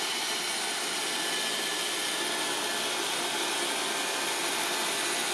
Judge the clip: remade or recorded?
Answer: recorded